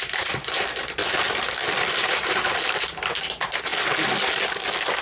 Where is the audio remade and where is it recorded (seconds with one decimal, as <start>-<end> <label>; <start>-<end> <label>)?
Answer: 0.0-1.0 remade; 1.0-1.9 recorded; 1.9-3.7 remade; 3.7-5.0 recorded